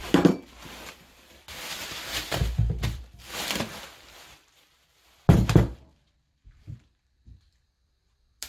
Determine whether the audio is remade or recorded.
remade